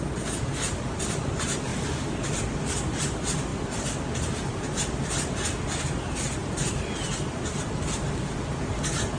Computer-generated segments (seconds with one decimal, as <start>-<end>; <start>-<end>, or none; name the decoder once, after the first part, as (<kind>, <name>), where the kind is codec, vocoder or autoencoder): none

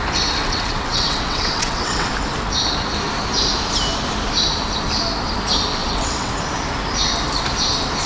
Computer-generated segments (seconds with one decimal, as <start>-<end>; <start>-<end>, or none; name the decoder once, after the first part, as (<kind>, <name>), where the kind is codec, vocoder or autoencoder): 0.4-2.1 (vocoder, WaveNeXt); 5.8-6.3